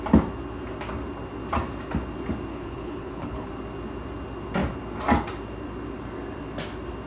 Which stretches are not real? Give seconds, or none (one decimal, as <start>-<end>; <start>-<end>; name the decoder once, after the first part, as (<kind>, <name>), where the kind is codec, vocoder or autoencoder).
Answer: 2.5-3.5 (codec, HILCodec)